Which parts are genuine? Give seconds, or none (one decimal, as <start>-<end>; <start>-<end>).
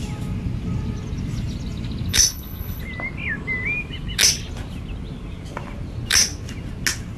0.0-2.1; 2.8-7.2